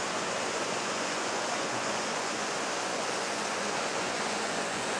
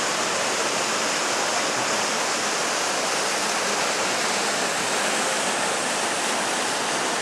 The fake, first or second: first